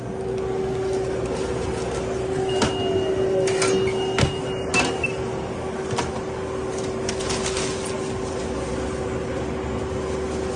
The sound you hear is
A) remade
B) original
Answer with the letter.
B